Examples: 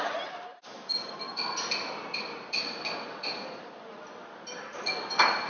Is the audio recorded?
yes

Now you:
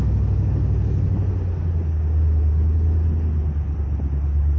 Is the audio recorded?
yes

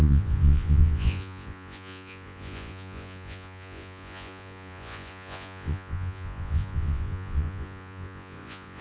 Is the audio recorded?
no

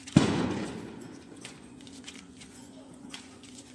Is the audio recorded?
no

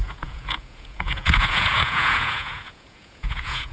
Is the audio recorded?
no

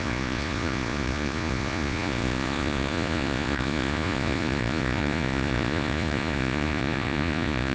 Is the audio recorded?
no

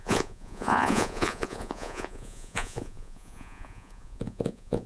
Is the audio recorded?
no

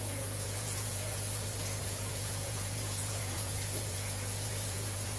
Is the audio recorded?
no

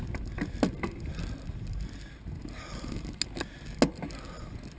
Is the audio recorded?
yes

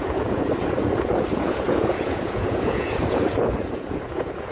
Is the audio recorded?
no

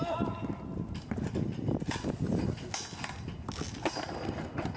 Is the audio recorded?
yes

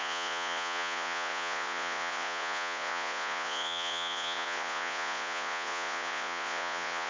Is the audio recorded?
no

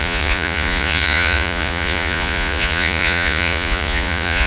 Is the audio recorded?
no